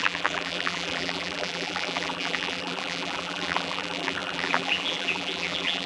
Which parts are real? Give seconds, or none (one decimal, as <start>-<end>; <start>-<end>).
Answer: none